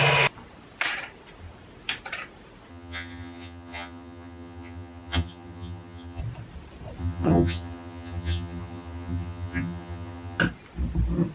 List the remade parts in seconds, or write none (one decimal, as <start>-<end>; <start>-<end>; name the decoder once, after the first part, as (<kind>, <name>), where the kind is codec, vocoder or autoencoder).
2.7-6.2 (vocoder, HiFi-GAN); 7.0-10.4